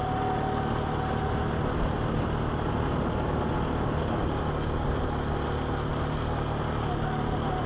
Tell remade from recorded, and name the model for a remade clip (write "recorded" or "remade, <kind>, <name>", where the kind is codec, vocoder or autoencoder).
recorded